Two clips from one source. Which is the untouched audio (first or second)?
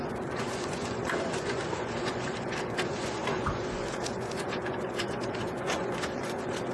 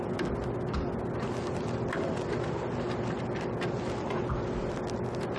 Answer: second